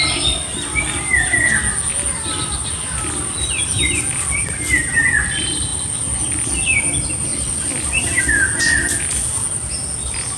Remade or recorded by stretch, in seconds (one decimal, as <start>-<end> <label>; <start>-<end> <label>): 0.0-10.4 recorded

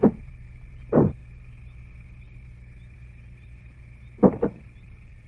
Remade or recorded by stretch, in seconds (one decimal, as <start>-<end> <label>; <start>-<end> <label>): 0.0-1.2 remade; 1.2-4.4 recorded; 4.4-5.3 remade

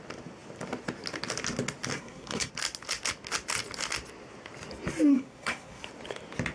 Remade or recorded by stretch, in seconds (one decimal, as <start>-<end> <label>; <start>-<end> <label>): 0.0-1.9 recorded; 1.9-2.5 remade; 2.5-5.1 recorded; 5.1-5.8 remade; 5.8-6.5 recorded